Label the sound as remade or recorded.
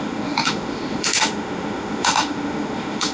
remade